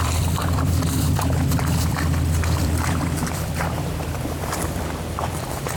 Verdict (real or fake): fake